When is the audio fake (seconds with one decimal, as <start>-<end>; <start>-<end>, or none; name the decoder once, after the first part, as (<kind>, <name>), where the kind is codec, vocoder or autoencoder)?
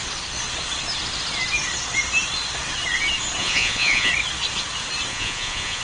3.4-4.1 (vocoder, Vocos); 5.1-5.8